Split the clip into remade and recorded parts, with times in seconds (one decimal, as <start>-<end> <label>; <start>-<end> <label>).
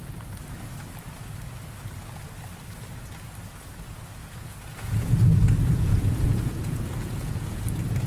0.0-4.2 recorded; 4.2-7.6 remade; 7.6-8.1 recorded